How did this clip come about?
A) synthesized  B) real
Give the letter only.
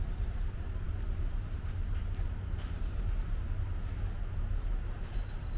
B